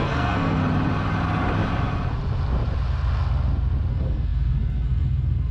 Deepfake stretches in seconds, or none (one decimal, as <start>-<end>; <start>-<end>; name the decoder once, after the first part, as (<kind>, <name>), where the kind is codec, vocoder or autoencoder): 0.0-0.6 (codec, SNAC); 3.9-5.5